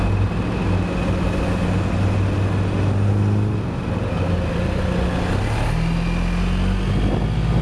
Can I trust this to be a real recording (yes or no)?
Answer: yes